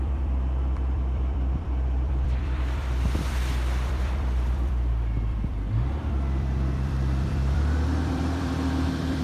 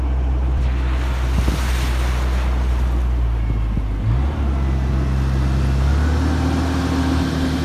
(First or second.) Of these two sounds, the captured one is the second